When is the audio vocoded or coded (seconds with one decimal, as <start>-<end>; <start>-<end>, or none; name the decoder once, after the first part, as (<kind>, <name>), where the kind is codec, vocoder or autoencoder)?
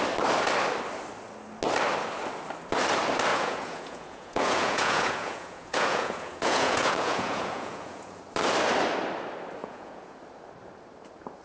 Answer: 3.3-8.2 (vocoder, Vocos); 9.6-10.2